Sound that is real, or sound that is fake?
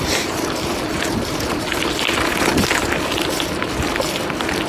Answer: real